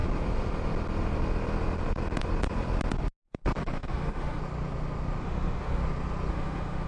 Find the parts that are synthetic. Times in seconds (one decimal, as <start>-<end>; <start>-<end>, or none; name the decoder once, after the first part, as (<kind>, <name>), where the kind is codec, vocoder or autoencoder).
3.6-4.4 (autoencoder, DAC-VAE); 5.2-5.8; 6.3-6.9